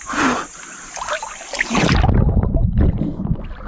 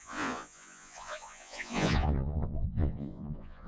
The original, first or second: first